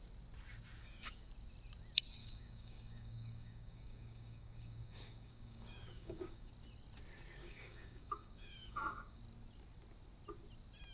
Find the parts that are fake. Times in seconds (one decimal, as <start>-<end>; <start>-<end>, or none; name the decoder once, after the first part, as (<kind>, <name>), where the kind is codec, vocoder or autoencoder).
0.8-1.3 (codec, DAC); 2.2-6.5; 7.4-9.2

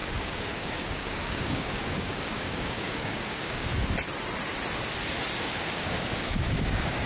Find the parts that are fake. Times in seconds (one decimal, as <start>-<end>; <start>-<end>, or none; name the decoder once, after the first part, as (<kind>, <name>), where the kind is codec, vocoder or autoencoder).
0.0-3.7 (codec, DAC); 5.4-7.1